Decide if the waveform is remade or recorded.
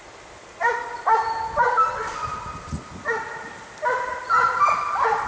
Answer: recorded